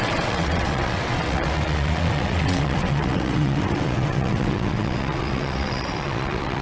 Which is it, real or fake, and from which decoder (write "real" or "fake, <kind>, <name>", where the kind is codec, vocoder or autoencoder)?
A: fake, vocoder, WaveNeXt